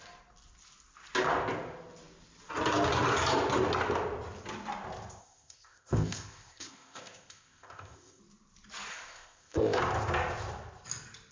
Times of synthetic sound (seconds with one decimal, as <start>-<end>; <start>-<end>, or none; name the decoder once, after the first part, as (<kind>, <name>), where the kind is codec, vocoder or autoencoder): 5.2-8.2 (codec, ZipCodec); 8.9-9.8